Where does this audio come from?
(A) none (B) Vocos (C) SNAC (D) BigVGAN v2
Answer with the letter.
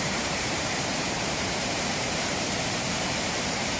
D